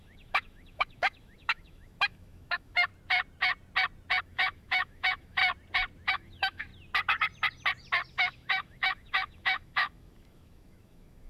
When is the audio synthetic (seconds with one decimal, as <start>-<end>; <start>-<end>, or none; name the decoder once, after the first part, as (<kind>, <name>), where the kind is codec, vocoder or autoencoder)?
0.0-2.9 (autoencoder, DAC-VAE); 4.2-5.4; 6.1-6.7; 8.1-11.3